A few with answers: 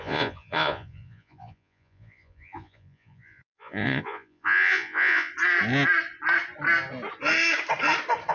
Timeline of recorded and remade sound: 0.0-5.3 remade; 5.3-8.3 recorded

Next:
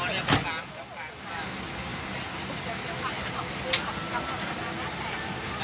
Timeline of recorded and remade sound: 0.0-5.6 recorded

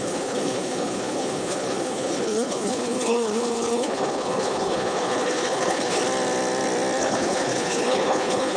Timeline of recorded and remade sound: 0.0-6.0 remade; 6.0-7.0 recorded; 7.0-8.6 remade

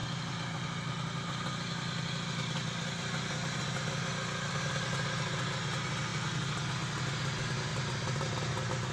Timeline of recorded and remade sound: 0.0-7.7 recorded; 7.7-8.5 remade; 8.5-8.9 recorded

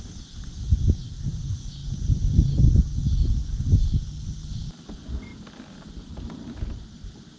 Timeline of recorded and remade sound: 0.0-7.4 recorded

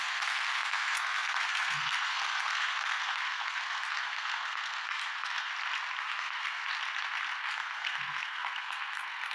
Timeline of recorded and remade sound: 0.0-5.5 remade; 5.5-6.0 recorded; 6.0-6.6 remade; 6.6-7.4 recorded; 7.4-9.3 remade

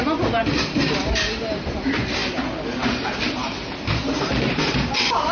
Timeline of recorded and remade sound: 0.0-2.2 remade; 2.2-2.9 recorded; 2.9-5.3 remade